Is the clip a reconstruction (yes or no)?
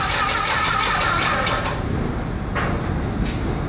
no